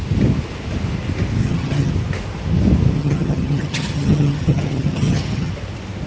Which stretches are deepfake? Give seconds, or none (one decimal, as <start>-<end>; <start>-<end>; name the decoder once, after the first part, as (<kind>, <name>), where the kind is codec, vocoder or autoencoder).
1.4-1.9 (vocoder, HiFi-GAN); 3.0-5.5